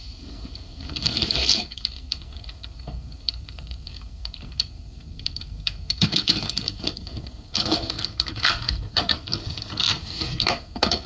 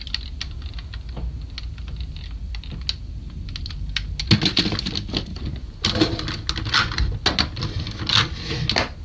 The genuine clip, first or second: second